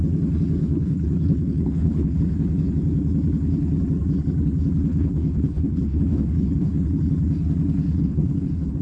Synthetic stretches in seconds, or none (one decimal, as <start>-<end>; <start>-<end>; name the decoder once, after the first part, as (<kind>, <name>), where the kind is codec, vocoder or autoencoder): 0.6-2.2 (codec, HILCodec); 4.9-7.0; 8.0-8.8